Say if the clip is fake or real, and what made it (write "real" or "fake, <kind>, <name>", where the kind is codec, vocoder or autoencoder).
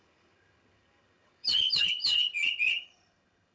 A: fake, vocoder, HiFi-GAN